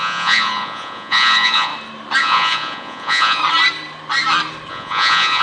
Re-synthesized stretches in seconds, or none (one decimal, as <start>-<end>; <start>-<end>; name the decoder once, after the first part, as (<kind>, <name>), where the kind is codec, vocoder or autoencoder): 0.0-1.7 (vocoder, Vocos); 2.2-3.4; 4.7-5.4